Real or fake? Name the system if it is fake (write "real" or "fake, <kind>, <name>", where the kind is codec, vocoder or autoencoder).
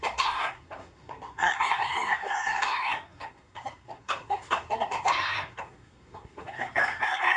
fake, codec, SNAC